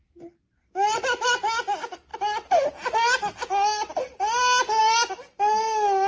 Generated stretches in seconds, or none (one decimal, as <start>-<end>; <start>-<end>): none